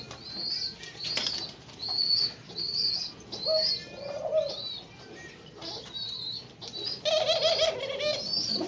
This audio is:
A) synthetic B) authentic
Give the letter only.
B